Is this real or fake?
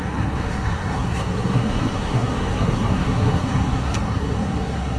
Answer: fake